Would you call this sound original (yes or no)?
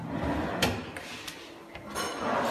yes